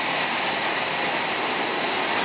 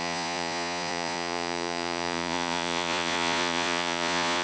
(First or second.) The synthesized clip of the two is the second